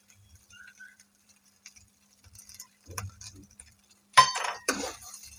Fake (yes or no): yes